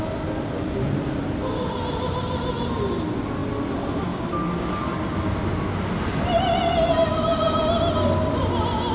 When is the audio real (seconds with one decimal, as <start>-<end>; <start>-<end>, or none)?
0.0-8.9